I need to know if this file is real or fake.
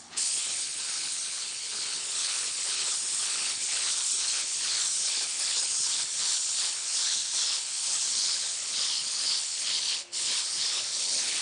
fake